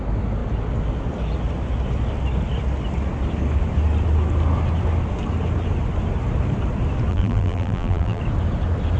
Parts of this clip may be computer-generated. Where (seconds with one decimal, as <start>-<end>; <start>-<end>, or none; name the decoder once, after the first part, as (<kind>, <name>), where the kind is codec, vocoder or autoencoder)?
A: 7.1-8.2 (vocoder, BigVGAN v2)